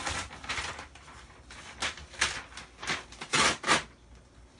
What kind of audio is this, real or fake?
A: real